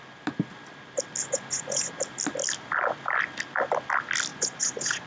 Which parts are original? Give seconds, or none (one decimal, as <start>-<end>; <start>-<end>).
0.0-1.2; 1.9-4.3